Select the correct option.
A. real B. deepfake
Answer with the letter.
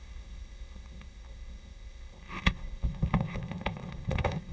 B